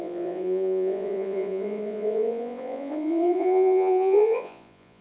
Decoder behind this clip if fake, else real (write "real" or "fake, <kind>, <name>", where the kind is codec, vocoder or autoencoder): fake, vocoder, Vocos